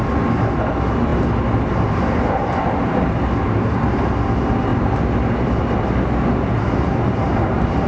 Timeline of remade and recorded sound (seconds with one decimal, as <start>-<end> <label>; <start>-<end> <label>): 0.0-7.9 recorded